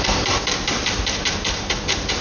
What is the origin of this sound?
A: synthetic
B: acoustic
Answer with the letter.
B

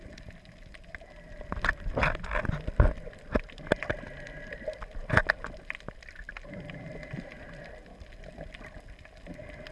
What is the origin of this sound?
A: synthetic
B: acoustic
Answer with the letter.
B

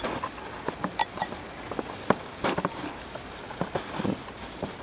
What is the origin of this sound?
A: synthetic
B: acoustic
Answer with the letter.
B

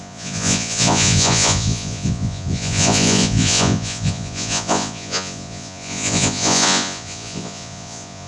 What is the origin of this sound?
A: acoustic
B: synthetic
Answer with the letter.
B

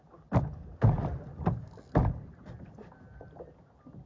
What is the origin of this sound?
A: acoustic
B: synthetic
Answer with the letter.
A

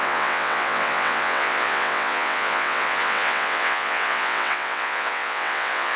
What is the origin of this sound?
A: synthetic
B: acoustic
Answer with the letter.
A